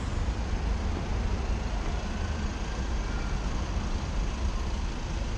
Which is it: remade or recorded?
recorded